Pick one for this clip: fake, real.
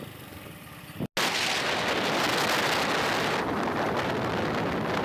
real